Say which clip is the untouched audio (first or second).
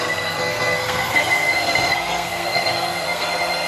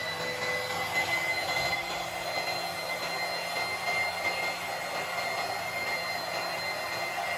second